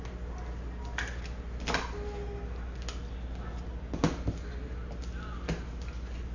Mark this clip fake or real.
real